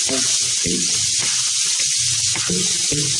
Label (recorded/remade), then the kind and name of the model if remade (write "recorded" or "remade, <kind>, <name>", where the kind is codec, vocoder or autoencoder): remade, vocoder, Vocos